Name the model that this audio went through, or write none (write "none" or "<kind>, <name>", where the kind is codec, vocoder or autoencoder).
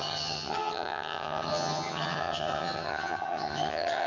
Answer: vocoder, HiFi-GAN